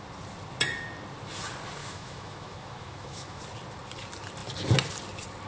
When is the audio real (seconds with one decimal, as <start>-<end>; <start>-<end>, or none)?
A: 0.0-1.8; 3.4-5.5

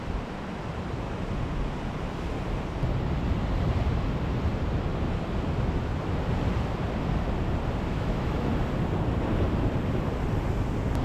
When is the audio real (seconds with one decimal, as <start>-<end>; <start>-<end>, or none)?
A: 0.0-7.9; 8.5-11.0

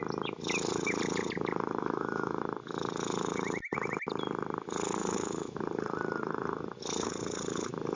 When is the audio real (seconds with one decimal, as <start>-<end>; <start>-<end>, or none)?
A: 0.0-1.8; 2.4-5.0; 5.6-8.0